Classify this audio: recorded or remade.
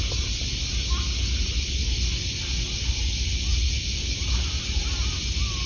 recorded